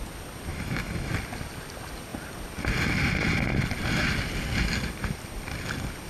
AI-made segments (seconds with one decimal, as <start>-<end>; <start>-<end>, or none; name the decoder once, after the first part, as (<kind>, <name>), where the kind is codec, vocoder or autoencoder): 0.5-1.1 (autoencoder, DAC-VAE)